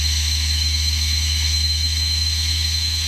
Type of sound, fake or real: fake